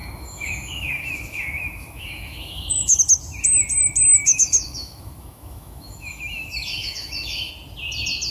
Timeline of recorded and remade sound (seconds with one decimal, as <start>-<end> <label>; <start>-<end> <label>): 0.0-3.0 remade; 3.0-4.2 recorded; 4.2-7.5 remade; 7.5-8.3 recorded